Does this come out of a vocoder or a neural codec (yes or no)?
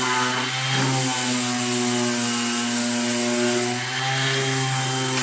no